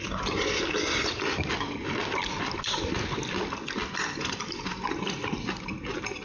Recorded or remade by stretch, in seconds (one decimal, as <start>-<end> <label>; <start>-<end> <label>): 0.0-6.2 recorded